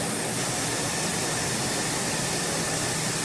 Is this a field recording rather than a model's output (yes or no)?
yes